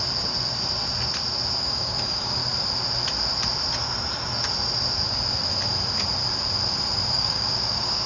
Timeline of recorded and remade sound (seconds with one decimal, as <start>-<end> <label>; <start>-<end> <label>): 0.0-1.6 recorded; 1.6-2.4 remade; 2.4-7.1 recorded; 7.1-8.1 remade